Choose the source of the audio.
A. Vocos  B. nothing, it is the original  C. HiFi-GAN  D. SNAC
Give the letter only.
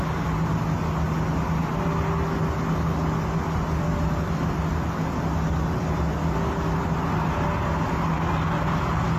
B